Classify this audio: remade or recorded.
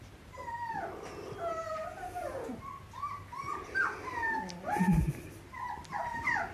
recorded